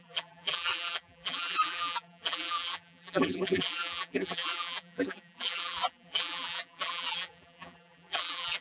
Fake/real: fake